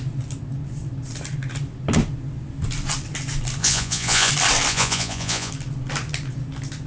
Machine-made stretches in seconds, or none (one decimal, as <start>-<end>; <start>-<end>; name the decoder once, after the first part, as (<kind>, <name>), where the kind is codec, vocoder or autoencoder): 3.6-4.3 (vocoder, Vocos); 4.7-5.5